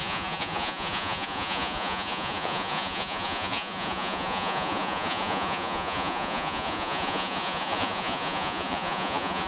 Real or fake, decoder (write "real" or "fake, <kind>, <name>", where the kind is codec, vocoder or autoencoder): fake, vocoder, Vocos